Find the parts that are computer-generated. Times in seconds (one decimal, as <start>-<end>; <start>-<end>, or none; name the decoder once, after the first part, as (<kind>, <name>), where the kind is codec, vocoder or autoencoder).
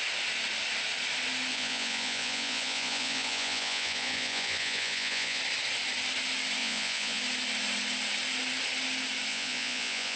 1.5-5.4 (vocoder, Vocos); 6.6-7.2; 9.3-10.2